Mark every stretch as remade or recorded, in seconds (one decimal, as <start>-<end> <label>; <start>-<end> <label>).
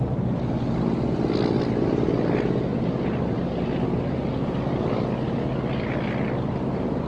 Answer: 0.0-7.1 recorded